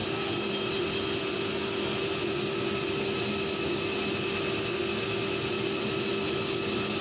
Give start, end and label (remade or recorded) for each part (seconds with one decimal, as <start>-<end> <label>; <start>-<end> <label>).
0.0-7.0 recorded